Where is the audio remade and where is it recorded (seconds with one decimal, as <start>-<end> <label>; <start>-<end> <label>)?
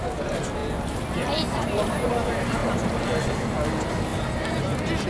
0.0-5.1 recorded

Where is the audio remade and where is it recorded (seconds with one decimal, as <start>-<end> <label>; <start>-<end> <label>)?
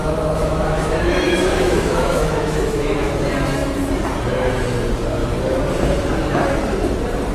0.0-3.2 remade; 3.2-7.3 recorded